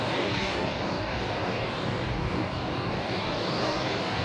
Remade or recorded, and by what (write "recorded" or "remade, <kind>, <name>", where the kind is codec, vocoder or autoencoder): remade, codec, DAC